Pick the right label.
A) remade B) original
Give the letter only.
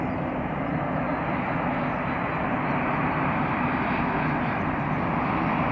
B